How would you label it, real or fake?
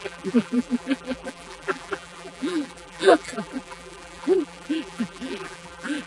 fake